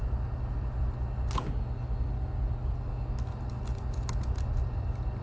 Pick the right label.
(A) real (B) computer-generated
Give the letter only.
A